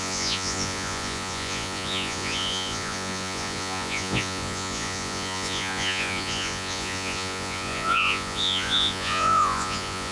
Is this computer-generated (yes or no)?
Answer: yes